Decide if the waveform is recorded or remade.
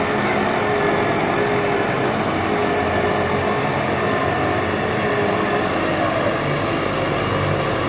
recorded